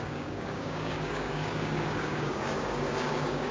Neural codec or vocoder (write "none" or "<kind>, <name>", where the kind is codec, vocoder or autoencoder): codec, DAC